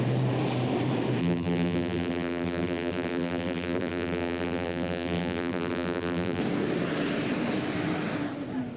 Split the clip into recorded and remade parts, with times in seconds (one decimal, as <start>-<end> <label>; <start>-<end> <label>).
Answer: 0.0-1.2 recorded; 1.2-6.4 remade; 6.4-8.8 recorded